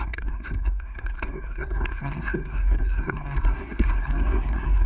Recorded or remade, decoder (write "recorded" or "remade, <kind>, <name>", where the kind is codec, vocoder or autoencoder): remade, codec, SNAC